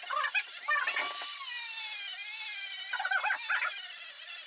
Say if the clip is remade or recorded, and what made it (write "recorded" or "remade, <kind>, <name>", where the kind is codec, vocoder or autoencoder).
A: recorded